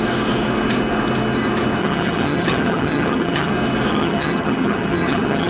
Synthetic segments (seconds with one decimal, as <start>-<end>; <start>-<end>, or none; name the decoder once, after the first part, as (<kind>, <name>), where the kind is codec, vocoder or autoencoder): 1.8-3.5 (vocoder, HiFi-GAN); 3.9-5.5